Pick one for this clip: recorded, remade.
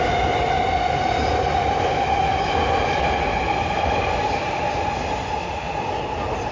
recorded